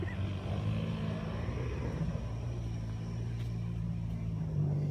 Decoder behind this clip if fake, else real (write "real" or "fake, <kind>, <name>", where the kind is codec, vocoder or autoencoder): real